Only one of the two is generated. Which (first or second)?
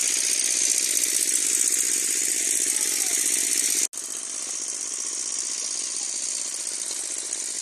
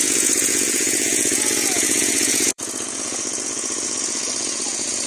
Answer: second